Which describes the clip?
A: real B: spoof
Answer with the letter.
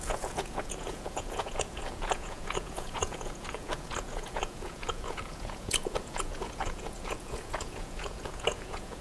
B